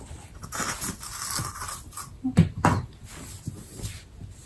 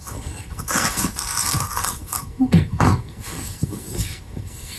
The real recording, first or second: first